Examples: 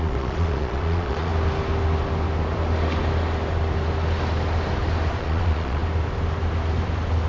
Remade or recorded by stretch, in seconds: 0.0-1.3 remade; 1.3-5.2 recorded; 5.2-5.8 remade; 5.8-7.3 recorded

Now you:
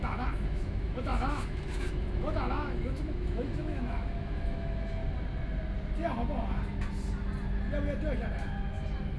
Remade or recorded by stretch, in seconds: 0.0-5.0 remade; 5.0-9.2 recorded

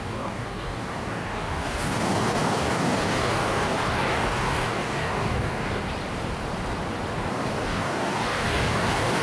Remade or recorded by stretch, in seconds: 0.0-5.8 remade; 5.8-7.3 recorded; 7.3-9.2 remade